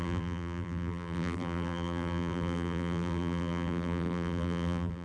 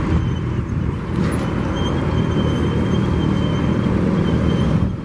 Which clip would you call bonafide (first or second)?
second